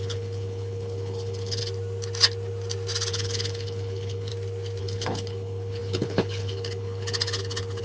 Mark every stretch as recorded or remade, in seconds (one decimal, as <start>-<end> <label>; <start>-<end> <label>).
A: 0.0-1.6 remade; 1.6-3.1 recorded; 3.1-4.3 remade; 4.3-4.8 recorded; 4.8-7.8 remade

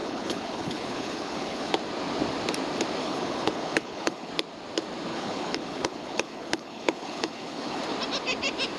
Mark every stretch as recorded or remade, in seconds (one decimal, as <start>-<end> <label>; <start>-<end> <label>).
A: 0.0-1.7 remade; 1.7-3.0 recorded; 3.0-4.3 remade; 4.3-5.1 recorded; 5.1-7.8 remade; 7.8-8.8 recorded

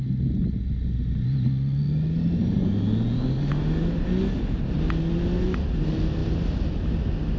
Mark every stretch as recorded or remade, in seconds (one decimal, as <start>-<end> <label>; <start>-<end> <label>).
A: 0.0-7.4 recorded

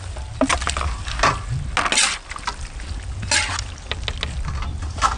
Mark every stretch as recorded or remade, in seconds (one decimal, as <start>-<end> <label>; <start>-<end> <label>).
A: 0.0-5.2 recorded

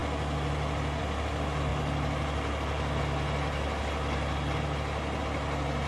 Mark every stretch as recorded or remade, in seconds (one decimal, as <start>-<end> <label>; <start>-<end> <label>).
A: 0.0-5.9 recorded

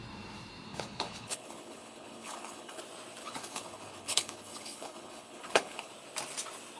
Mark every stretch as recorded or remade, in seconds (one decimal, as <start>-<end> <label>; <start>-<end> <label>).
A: 0.0-0.7 recorded; 0.7-2.8 remade; 2.8-3.2 recorded; 3.2-5.9 remade; 5.9-6.8 recorded